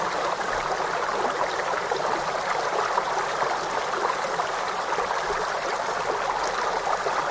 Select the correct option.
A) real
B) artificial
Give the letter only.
A